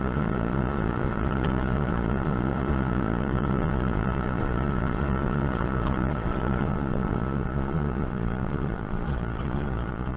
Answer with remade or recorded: remade